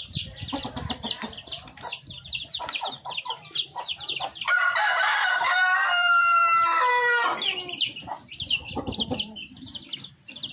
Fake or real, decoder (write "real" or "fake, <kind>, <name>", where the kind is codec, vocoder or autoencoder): fake, vocoder, BigVGAN v2